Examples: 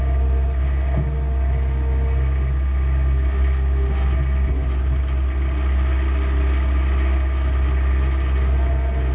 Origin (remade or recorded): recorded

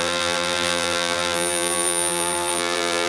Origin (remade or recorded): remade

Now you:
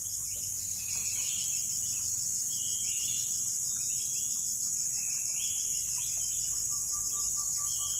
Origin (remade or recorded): recorded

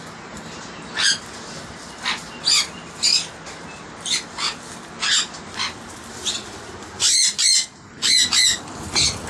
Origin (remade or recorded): recorded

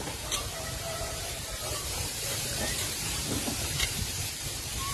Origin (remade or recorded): remade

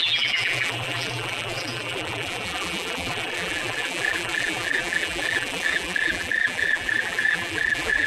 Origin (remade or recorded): remade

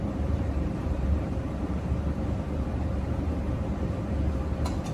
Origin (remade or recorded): remade